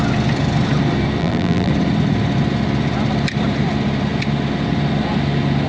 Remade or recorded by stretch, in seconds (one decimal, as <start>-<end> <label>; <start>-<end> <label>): 0.0-1.2 recorded; 1.2-1.7 remade; 1.7-5.7 recorded